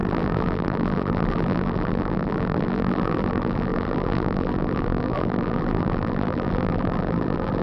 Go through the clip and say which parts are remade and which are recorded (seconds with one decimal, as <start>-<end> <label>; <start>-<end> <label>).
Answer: 0.0-7.6 remade

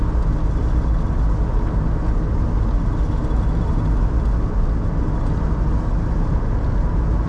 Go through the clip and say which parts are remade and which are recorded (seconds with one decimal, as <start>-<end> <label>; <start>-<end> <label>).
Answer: 0.0-7.3 recorded